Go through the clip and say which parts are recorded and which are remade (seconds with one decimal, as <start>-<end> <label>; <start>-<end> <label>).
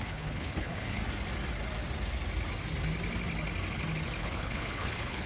0.0-1.0 remade; 1.0-4.2 recorded; 4.2-5.3 remade